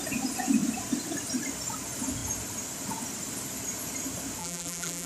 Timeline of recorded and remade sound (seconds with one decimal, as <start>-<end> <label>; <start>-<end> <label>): 0.0-4.4 recorded; 4.4-5.1 remade